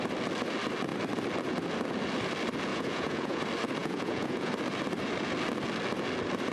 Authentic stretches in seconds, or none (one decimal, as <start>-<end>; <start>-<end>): 0.0-2.7; 3.4-3.8; 4.5-6.5